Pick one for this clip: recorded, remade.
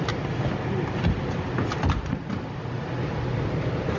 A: recorded